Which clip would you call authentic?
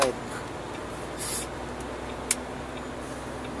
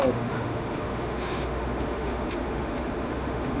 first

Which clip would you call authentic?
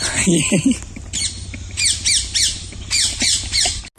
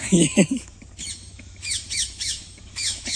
first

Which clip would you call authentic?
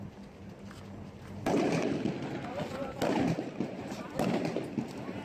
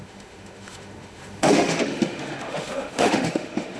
first